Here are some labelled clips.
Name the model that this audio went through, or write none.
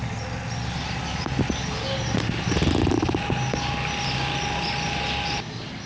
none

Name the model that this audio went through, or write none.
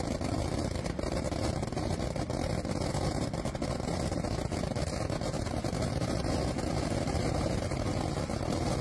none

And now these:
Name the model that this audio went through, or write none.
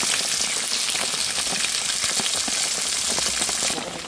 none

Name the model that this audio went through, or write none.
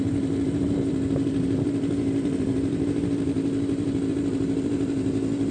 vocoder, BigVGAN v2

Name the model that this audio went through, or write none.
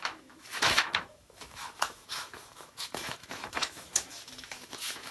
autoencoder, DAC-VAE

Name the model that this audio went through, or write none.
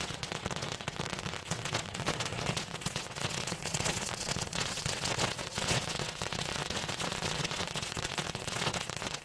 vocoder, WaveNeXt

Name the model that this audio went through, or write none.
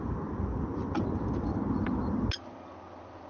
none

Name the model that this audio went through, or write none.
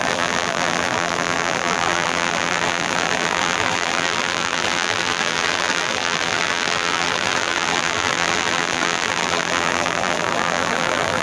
vocoder, BigVGAN v2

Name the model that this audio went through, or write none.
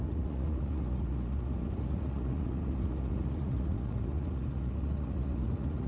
vocoder, Vocos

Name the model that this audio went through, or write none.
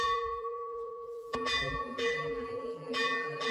vocoder, BigVGAN v2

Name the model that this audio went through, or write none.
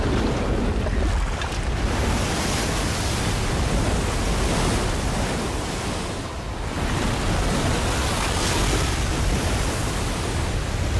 none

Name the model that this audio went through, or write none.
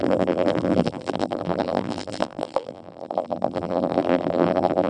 vocoder, BigVGAN v2